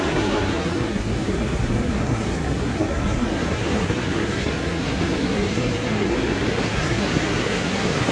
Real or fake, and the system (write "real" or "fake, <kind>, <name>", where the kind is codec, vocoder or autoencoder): fake, codec, SNAC